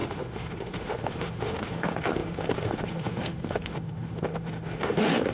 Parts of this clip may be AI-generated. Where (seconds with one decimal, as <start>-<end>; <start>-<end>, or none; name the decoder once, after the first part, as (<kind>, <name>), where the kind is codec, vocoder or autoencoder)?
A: 0.0-5.3 (autoencoder, DAC-VAE)